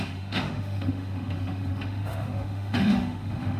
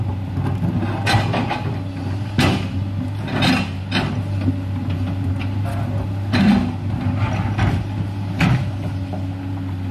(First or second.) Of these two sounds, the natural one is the second